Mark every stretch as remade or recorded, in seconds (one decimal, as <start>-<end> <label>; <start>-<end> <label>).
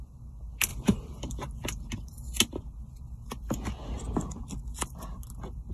0.0-5.7 recorded